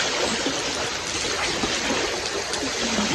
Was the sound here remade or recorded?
recorded